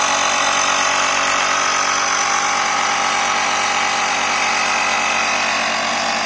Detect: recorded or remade remade